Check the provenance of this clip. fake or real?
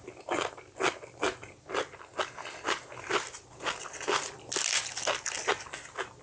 real